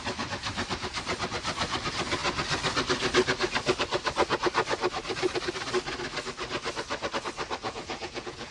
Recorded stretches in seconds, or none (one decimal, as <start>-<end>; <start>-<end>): 0.0-7.6

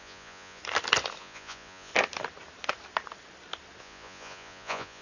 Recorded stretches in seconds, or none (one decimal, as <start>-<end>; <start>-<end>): 0.6-1.2; 1.9-3.8

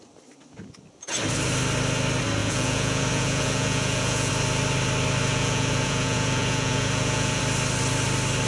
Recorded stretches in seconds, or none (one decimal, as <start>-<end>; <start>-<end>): 0.0-2.4; 4.3-5.3; 7.4-8.5

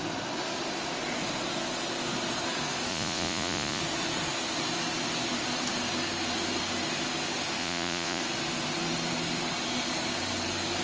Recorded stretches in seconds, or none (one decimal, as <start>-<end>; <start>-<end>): 0.0-2.9; 3.8-7.6; 8.2-10.8

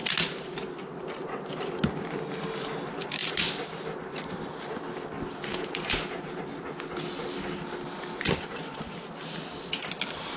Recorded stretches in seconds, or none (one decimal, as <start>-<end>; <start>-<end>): 0.0-5.5; 6.4-10.4

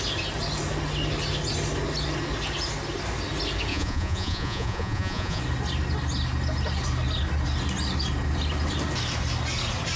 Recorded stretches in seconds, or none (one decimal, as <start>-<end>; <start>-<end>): 0.0-3.7; 5.4-10.0

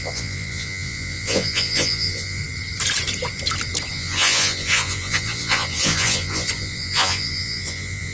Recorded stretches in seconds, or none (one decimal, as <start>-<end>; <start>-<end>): 2.4-3.9